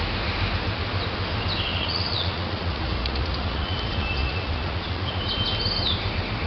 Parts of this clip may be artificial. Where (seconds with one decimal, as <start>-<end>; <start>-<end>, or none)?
1.7-5.2